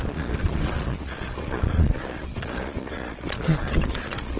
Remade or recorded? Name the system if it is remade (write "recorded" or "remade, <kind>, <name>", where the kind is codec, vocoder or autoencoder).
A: remade, vocoder, Vocos